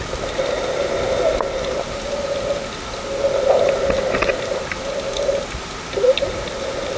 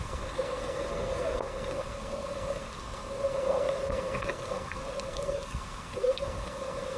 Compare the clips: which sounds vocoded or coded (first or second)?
second